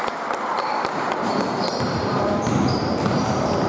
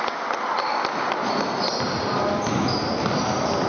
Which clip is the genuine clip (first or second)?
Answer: second